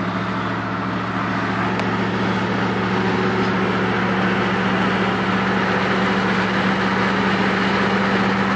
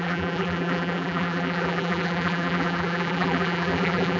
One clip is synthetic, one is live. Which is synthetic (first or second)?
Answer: second